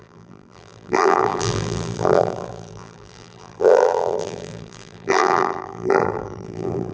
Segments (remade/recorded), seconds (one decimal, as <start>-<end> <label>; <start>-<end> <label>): 0.0-6.9 remade